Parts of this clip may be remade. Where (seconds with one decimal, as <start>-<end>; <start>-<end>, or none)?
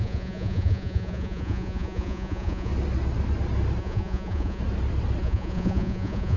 0.0-2.7; 3.8-4.6; 5.2-6.4